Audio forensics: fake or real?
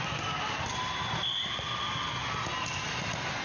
real